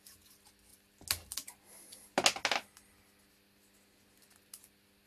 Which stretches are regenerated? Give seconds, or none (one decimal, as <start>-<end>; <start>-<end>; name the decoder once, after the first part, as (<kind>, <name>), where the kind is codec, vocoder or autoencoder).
none